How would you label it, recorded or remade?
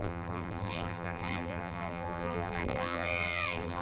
remade